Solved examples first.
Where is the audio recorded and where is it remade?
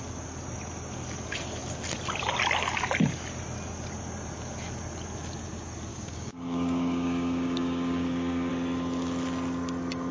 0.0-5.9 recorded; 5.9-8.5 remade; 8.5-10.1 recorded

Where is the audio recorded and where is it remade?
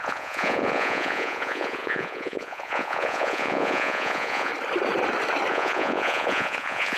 0.0-4.5 remade; 4.5-5.5 recorded; 5.5-7.0 remade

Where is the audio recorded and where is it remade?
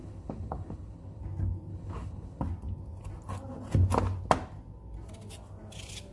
0.0-1.2 remade; 1.2-1.7 recorded; 1.7-2.4 remade; 2.4-6.1 recorded